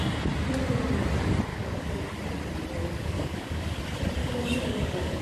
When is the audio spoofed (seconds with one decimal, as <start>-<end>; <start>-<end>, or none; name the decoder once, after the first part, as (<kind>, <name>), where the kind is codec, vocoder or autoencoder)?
1.5-2.0 (codec, DAC); 2.8-3.8; 4.2-5.2